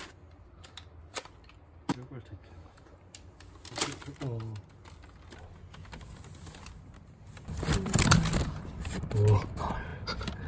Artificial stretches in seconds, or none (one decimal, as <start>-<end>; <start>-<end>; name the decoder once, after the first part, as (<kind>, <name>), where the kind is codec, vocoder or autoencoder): 1.9-2.8 (autoencoder, DAC-VAE)